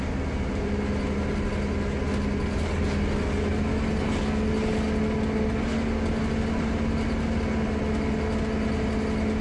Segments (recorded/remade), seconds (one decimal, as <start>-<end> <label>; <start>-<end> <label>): 0.0-9.4 recorded